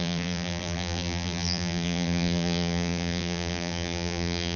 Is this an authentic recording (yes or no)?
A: no